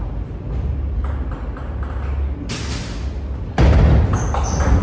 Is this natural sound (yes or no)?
yes